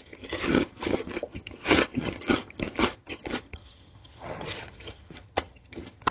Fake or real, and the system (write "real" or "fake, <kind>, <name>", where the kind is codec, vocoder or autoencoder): fake, vocoder, HiFi-GAN